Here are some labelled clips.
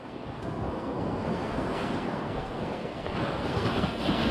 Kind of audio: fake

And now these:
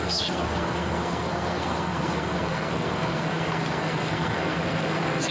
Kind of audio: fake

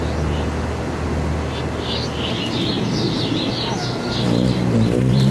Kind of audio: real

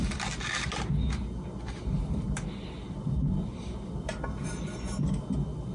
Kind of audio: real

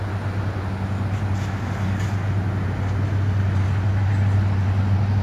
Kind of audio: real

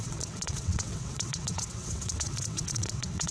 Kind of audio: fake